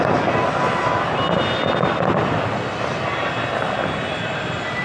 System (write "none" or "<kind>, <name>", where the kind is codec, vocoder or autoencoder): none